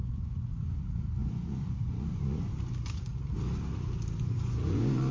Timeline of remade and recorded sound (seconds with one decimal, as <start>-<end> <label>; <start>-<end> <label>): 0.0-2.5 remade; 2.5-4.2 recorded; 4.2-5.1 remade